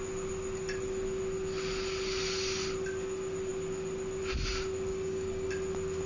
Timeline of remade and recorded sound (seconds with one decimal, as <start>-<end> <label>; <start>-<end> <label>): 0.0-4.9 recorded; 4.9-5.5 remade; 5.5-6.1 recorded